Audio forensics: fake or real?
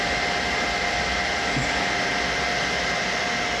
real